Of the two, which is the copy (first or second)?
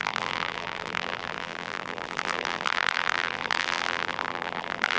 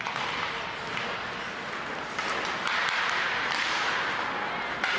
first